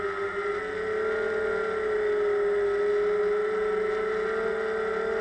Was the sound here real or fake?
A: real